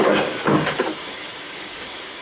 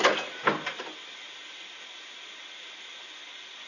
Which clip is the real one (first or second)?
second